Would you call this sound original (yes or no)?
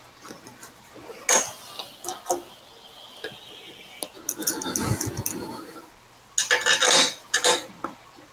yes